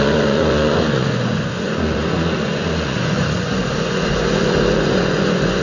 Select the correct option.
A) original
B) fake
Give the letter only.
B